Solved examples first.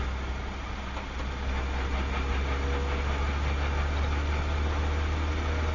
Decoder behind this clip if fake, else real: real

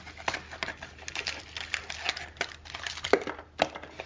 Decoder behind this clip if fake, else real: real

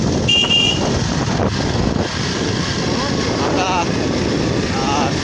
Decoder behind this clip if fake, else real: real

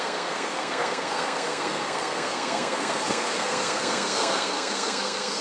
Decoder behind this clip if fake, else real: fake, codec, SNAC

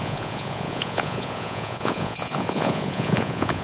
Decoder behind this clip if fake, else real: fake, vocoder, Vocos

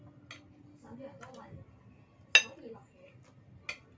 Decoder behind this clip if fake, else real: real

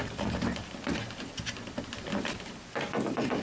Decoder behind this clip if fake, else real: real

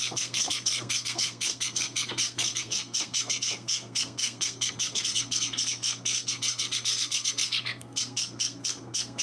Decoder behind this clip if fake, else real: fake, codec, SNAC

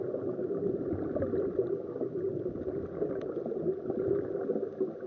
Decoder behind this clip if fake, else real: real